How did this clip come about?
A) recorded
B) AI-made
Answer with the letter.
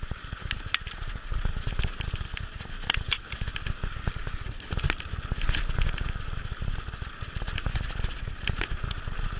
A